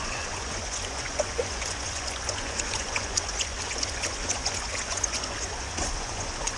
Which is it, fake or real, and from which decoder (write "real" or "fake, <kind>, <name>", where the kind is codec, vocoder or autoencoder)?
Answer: fake, vocoder, Vocos